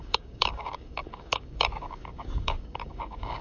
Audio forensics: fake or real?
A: fake